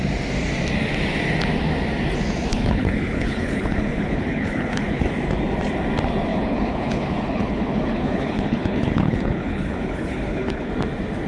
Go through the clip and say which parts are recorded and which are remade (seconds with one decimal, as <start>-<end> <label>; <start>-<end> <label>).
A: 0.0-2.5 recorded; 2.5-5.1 remade; 5.1-6.3 recorded; 6.3-10.7 remade; 10.7-11.3 recorded